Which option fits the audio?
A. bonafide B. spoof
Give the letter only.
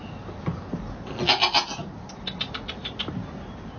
A